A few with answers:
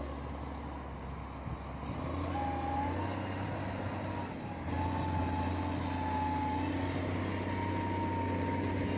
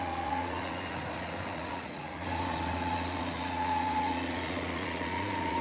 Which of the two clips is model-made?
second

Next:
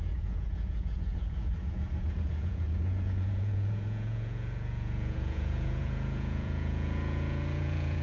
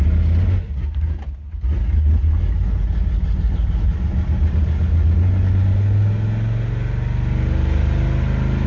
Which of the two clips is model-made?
first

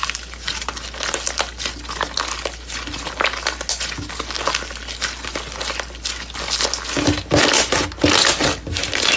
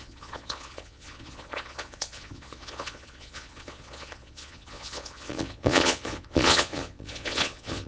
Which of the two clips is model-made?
second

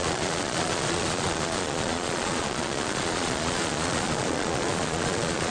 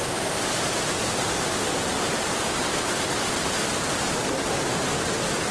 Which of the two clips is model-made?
first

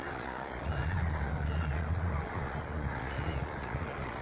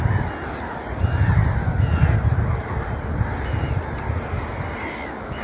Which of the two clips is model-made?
first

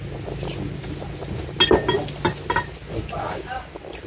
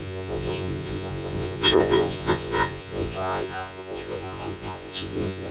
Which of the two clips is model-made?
second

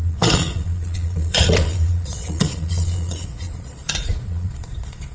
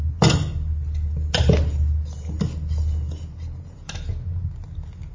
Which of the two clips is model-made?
first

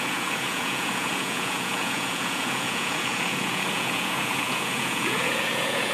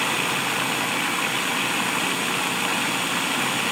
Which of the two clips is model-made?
first